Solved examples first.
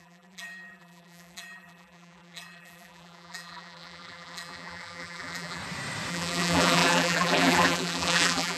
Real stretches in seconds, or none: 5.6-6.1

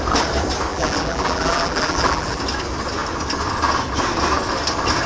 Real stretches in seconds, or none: 0.0-0.7; 2.4-5.1

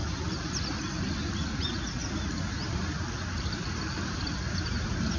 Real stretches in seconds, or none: 0.8-2.0

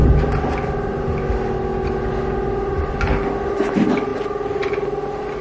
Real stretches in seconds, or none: 0.0-2.0

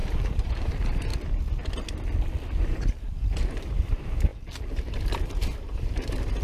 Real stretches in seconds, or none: 1.1-2.6

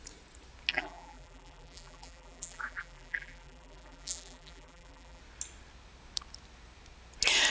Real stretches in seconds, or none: 0.0-0.7; 5.2-7.5

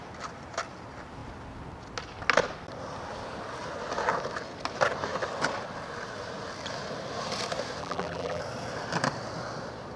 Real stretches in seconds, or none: 0.0-7.8; 8.4-10.0